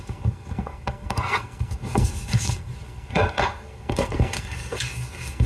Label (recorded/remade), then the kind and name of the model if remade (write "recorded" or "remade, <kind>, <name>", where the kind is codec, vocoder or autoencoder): remade, codec, SNAC